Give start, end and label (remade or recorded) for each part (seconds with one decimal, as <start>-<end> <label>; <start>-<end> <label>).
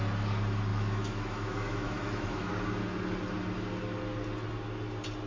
0.0-0.7 recorded; 0.7-2.5 remade; 2.5-5.3 recorded